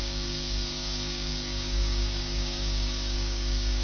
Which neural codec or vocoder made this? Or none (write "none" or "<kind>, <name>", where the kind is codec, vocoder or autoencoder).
codec, DAC